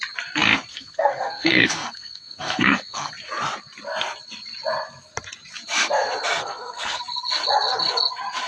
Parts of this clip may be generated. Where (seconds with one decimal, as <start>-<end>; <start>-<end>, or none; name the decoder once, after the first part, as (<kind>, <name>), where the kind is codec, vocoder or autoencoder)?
0.7-3.1 (codec, SNAC); 6.4-7.0